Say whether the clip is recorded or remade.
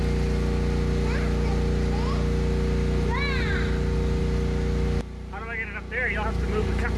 recorded